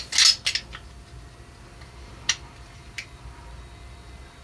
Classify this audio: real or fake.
real